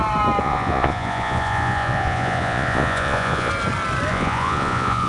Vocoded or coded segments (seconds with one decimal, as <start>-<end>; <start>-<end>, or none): 0.4-3.5; 4.1-5.1